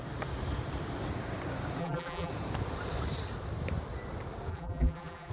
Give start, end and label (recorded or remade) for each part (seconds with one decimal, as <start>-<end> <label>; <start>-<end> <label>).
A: 0.0-1.8 recorded; 1.8-2.3 remade; 2.3-4.5 recorded; 4.5-5.3 remade